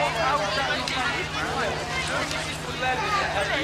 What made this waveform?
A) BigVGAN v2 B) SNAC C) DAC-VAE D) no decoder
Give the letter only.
D